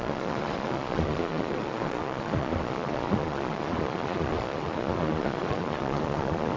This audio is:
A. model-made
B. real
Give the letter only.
A